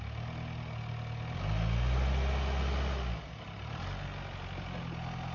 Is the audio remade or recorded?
recorded